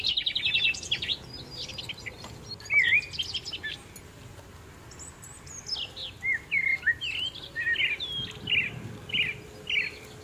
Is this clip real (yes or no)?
yes